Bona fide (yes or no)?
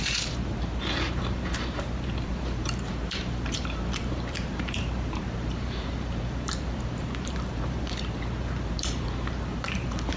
no